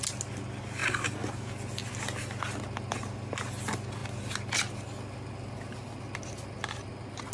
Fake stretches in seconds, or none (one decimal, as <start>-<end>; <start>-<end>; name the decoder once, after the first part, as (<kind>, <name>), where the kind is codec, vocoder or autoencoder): none